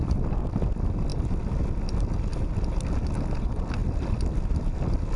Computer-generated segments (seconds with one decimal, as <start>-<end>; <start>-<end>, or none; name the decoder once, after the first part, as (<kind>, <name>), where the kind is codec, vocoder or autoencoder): 3.8-5.2 (vocoder, BigVGAN v2)